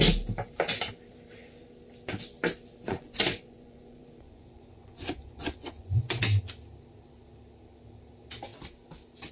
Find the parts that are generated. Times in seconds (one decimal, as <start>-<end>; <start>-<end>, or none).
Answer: 2.8-6.2